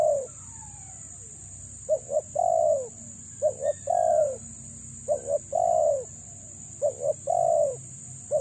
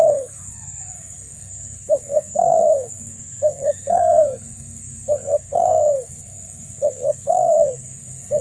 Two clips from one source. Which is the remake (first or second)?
second